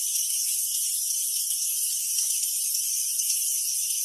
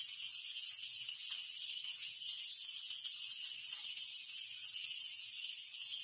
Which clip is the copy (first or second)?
first